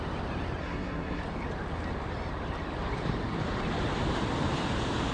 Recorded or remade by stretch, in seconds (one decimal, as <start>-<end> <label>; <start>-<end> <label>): 0.0-0.6 recorded; 0.6-1.2 remade; 1.2-5.1 recorded

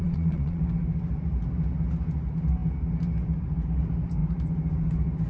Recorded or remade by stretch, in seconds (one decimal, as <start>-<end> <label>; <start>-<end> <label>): 0.0-0.6 remade; 0.6-5.3 recorded

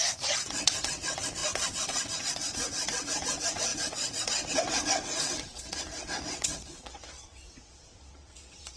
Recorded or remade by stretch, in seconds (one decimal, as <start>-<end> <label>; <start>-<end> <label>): 0.0-8.8 remade

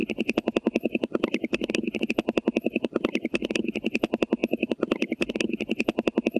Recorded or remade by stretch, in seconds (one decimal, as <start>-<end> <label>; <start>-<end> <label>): 0.0-6.4 recorded